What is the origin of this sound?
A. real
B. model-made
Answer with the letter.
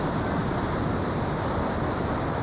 A